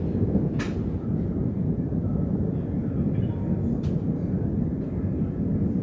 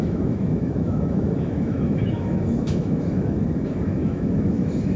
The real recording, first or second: first